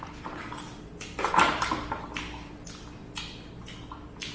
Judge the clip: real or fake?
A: fake